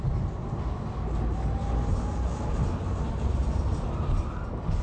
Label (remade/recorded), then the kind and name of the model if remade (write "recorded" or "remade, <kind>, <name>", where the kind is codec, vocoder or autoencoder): recorded